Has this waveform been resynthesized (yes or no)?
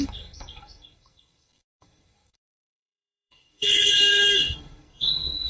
yes